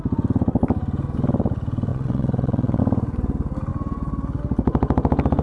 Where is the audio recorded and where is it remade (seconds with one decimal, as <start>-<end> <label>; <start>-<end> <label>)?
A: 0.0-1.9 recorded; 1.9-2.8 remade; 2.8-5.4 recorded